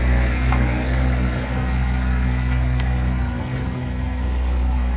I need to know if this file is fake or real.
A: fake